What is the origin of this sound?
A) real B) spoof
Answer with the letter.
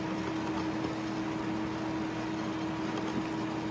A